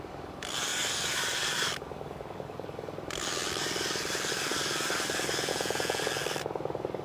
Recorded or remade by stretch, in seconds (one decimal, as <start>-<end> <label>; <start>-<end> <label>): 0.0-5.5 remade; 5.5-6.0 recorded; 6.0-7.0 remade